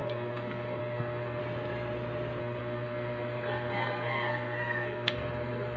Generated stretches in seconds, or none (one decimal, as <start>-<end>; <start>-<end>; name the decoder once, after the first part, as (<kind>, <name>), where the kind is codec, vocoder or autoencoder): 0.0-1.4 (codec, SNAC); 2.4-5.8